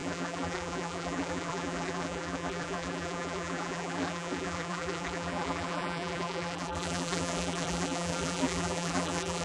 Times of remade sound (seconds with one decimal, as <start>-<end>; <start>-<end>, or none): 0.0-9.4